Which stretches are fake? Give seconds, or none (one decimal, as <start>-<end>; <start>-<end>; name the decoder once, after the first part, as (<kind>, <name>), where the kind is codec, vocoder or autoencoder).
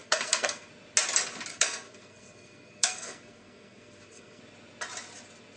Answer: 0.0-0.7 (codec, SNAC); 1.5-4.4